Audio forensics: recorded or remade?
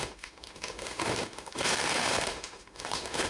remade